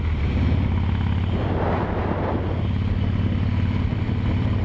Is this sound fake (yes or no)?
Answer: no